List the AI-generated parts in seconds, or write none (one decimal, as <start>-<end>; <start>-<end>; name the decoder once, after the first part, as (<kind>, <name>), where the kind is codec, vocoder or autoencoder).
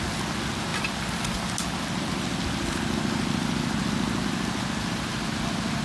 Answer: none